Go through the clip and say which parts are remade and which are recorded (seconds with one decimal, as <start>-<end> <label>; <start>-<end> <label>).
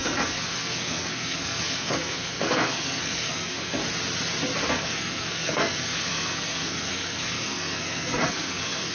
0.0-3.8 remade; 3.8-4.7 recorded; 4.7-8.9 remade